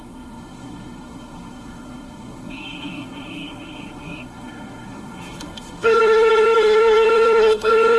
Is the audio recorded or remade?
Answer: remade